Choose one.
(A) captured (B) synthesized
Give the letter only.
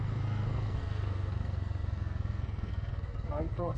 B